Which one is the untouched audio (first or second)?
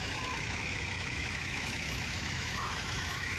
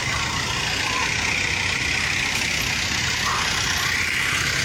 second